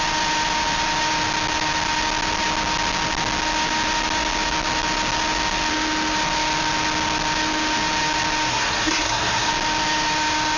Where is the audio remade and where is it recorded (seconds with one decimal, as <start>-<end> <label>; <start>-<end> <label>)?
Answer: 0.0-8.5 recorded; 8.5-9.5 remade; 9.5-10.6 recorded